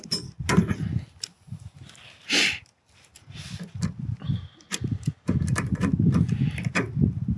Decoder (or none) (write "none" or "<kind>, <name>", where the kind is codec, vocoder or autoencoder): none